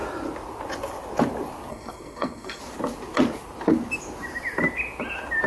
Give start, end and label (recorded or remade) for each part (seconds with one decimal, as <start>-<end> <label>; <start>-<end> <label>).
0.0-1.7 recorded; 1.7-2.6 remade; 2.6-5.5 recorded